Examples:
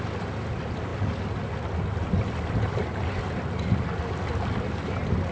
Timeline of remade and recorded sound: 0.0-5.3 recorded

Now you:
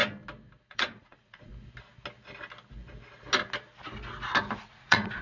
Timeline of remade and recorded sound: 0.0-0.7 recorded; 0.7-1.5 remade; 1.5-4.6 recorded; 4.6-5.2 remade

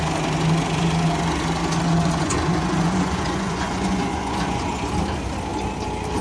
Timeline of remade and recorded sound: 0.0-1.9 recorded; 1.9-4.9 remade; 4.9-6.2 recorded